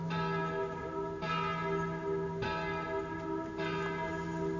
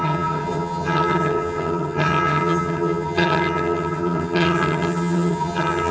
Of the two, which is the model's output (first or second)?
second